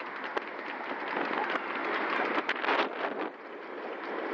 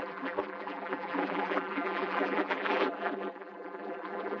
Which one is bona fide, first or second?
first